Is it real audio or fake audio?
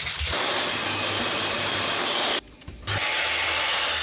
real